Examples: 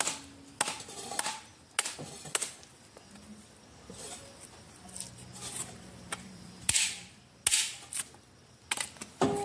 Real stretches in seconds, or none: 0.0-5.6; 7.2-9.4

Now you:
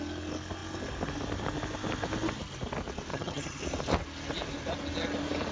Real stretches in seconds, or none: 0.0-3.1; 3.6-5.5